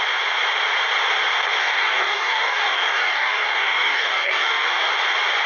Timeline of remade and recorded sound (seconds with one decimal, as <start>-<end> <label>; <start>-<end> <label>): 0.0-1.6 recorded; 1.6-4.9 remade; 4.9-5.5 recorded